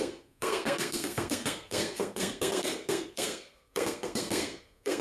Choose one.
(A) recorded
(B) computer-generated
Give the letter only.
B